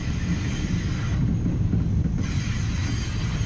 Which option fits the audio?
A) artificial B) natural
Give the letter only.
B